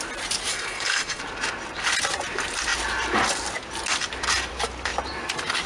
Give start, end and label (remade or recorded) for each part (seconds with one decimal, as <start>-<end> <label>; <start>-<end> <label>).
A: 0.0-0.5 recorded; 0.5-1.2 remade; 1.2-5.7 recorded